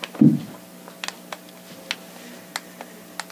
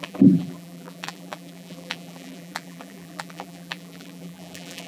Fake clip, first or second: second